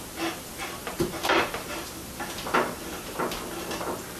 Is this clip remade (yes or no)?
no